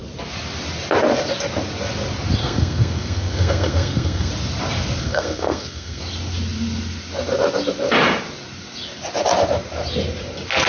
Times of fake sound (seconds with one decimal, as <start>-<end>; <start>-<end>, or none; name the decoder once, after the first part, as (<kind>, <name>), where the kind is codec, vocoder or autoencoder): 2.4-4.3 (codec, SNAC); 5.0-6.0